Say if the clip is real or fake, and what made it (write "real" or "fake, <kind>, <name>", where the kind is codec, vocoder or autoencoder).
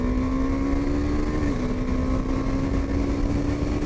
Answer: real